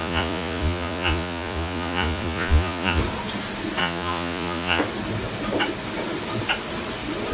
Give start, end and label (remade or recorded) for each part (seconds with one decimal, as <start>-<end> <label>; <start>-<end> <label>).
0.0-3.0 remade; 3.0-3.8 recorded; 3.8-4.8 remade; 4.8-7.3 recorded